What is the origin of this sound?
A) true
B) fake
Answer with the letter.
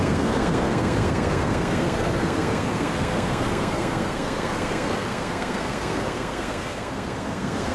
B